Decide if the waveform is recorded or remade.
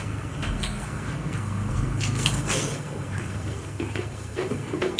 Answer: remade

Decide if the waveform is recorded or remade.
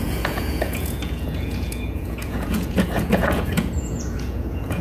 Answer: remade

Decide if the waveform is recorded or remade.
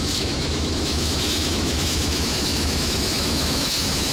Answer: remade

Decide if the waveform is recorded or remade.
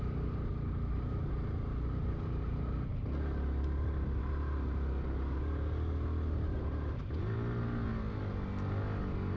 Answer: recorded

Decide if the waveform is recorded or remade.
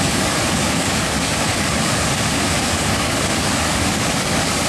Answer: remade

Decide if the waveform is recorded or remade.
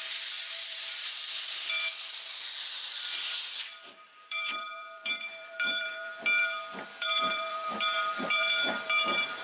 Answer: remade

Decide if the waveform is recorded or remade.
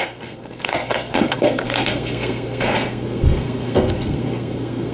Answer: remade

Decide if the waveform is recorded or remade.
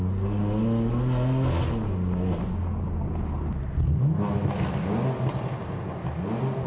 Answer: recorded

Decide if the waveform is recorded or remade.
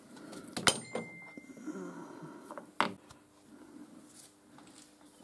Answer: recorded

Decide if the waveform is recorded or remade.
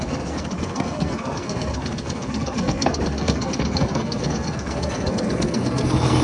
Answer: remade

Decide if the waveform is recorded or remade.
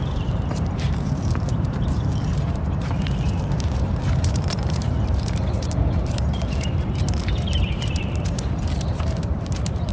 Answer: remade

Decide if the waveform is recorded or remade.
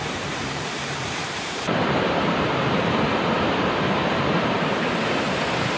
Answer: remade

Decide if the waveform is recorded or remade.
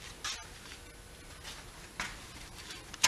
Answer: recorded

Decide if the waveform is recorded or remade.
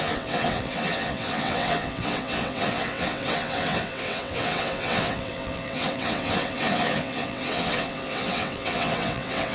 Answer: remade